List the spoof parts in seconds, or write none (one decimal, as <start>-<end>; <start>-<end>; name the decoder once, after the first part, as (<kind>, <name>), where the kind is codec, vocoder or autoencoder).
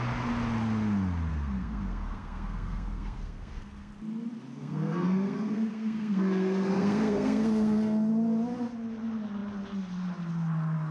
1.3-3.9 (codec, SNAC); 4.6-8.1